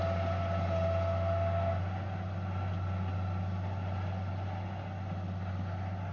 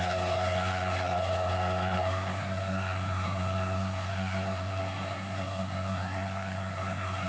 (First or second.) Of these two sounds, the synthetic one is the second